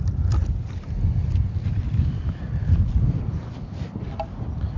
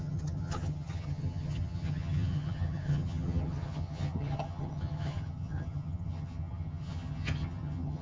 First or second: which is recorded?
first